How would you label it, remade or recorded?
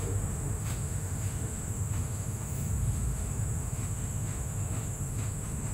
remade